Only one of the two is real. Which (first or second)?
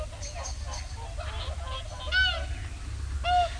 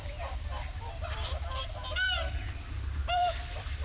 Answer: first